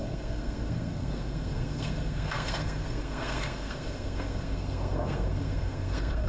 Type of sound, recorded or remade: remade